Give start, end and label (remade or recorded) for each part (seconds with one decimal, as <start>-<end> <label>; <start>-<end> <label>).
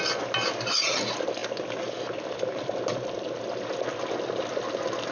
0.0-5.1 recorded